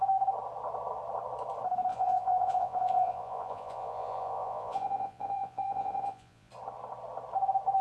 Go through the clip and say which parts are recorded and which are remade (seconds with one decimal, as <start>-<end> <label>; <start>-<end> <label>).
0.0-1.9 recorded; 1.9-6.5 remade; 6.5-7.8 recorded